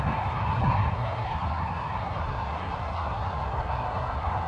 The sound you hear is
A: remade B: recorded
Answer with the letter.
A